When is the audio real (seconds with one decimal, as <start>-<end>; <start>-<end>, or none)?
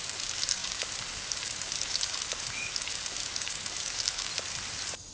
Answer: 4.3-5.1